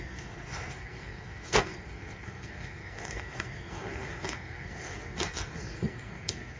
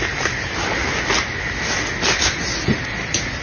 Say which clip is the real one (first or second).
second